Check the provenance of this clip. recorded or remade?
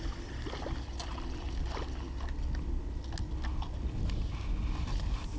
recorded